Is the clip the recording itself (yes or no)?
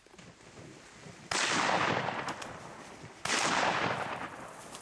yes